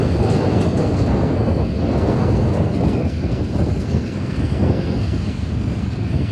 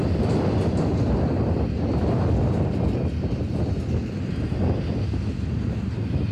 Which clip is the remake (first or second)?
first